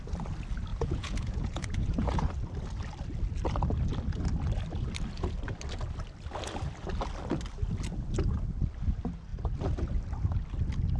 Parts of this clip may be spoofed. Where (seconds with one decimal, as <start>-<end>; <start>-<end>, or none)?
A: 0.7-2.3

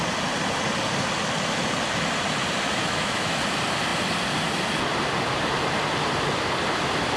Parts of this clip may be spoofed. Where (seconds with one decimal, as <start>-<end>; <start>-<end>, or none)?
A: 2.8-3.4

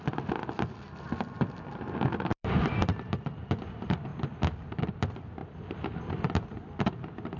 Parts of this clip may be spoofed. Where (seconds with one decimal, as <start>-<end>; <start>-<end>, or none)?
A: 0.0-4.1; 4.8-7.4

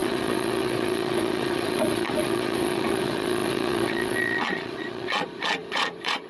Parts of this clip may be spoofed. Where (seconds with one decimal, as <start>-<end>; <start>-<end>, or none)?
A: 0.0-6.3

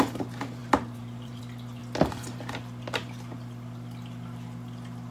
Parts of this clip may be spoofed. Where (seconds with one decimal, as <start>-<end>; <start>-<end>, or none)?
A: 0.6-1.4

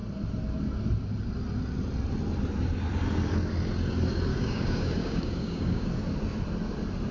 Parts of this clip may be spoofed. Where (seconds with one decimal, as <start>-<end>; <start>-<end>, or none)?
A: 4.3-5.9

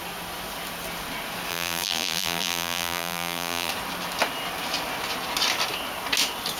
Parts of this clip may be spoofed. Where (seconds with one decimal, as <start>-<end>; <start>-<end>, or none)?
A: 1.5-3.7

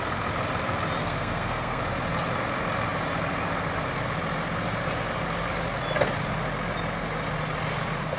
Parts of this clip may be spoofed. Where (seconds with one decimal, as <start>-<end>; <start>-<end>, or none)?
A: 1.0-1.8